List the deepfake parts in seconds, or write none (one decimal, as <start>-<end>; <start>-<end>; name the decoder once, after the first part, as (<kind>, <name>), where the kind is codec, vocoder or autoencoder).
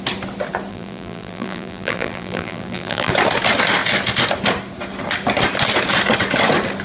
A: 0.7-3.1 (vocoder, BigVGAN v2)